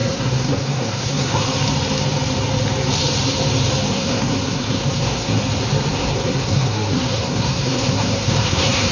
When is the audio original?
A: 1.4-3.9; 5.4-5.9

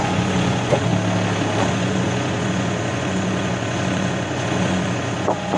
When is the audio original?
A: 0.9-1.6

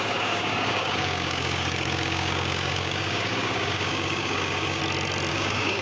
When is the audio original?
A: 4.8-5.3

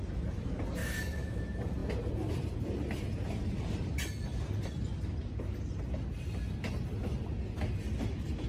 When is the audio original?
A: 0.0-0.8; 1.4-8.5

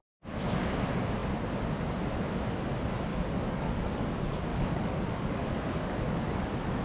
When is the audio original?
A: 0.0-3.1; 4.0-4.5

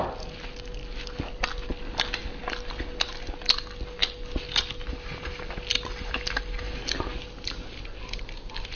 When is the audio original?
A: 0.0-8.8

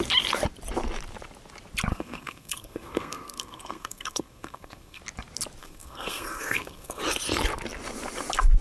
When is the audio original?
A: 0.0-1.9; 5.0-5.6; 7.0-8.6

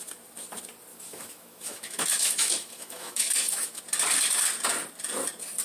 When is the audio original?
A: 0.0-0.9; 3.8-5.6